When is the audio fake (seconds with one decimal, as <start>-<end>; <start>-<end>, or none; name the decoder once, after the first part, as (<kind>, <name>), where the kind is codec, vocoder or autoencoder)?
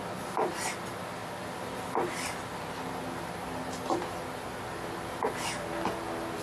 1.2-2.9 (vocoder, BigVGAN v2)